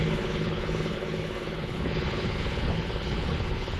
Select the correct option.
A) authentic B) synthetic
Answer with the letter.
B